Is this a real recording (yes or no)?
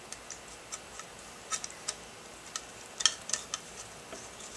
yes